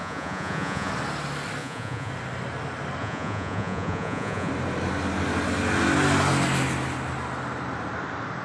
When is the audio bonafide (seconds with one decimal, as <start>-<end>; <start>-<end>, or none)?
0.9-1.6; 2.1-3.0; 4.5-8.4